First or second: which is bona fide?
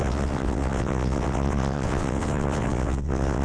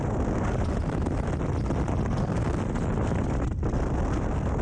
second